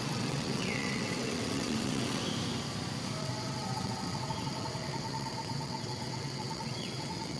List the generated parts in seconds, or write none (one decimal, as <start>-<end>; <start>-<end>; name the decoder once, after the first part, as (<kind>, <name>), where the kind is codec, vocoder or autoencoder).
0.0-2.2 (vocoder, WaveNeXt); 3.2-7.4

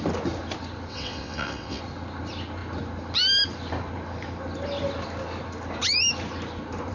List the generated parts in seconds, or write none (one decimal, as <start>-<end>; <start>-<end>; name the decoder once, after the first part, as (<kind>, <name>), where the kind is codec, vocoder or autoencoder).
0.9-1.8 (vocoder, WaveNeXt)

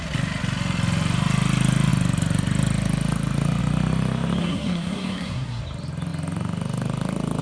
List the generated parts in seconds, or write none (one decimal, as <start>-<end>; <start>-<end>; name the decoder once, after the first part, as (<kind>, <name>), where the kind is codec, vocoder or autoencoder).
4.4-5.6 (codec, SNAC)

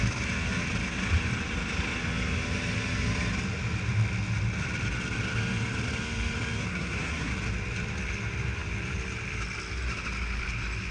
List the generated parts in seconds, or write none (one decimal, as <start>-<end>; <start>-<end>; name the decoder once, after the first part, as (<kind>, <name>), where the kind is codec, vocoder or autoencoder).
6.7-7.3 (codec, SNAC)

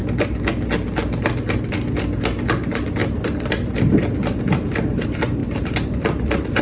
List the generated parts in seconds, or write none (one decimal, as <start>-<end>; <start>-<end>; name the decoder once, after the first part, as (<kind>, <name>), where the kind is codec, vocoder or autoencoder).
3.0-3.9 (vocoder, BigVGAN v2); 5.4-6.6

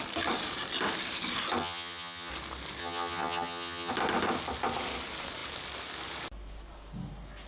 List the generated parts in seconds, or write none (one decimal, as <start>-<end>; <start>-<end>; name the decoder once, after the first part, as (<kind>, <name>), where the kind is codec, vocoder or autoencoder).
1.6-2.3 (vocoder, HiFi-GAN); 2.8-3.9

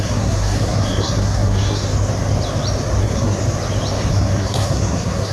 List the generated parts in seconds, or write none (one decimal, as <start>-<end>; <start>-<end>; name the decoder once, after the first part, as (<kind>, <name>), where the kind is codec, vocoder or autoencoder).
0.0-1.8 (codec, SNAC); 3.0-3.4; 4.1-5.3

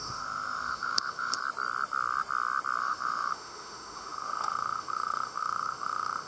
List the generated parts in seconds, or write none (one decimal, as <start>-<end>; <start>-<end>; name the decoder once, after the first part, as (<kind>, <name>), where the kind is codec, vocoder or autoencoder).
0.0-1.4 (autoencoder, DAC-VAE); 2.8-6.3